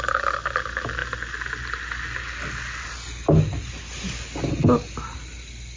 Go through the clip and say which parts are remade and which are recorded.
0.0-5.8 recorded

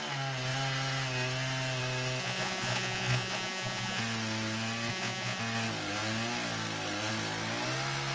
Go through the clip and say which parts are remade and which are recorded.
0.0-2.2 recorded; 2.2-4.0 remade; 4.0-4.9 recorded; 4.9-5.4 remade; 5.4-8.1 recorded

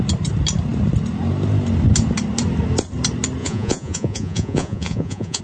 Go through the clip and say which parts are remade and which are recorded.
0.0-3.4 recorded; 3.4-5.4 remade

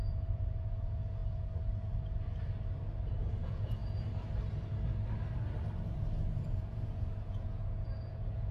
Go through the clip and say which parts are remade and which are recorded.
0.0-1.2 remade; 1.2-3.4 recorded; 3.4-3.8 remade; 3.8-6.3 recorded; 6.3-8.5 remade

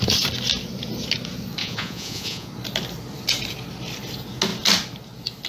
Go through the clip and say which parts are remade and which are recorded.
0.0-1.6 recorded; 1.6-2.5 remade; 2.5-5.5 recorded

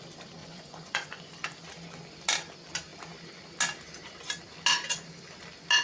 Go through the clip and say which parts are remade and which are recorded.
0.0-0.4 recorded; 0.4-1.3 remade; 1.3-5.8 recorded